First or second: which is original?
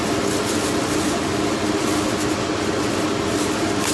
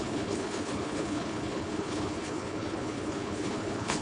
first